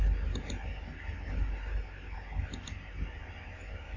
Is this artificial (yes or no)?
no